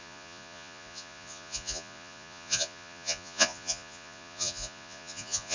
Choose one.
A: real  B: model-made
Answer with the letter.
B